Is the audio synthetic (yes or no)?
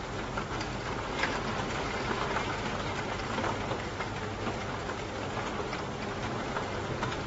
no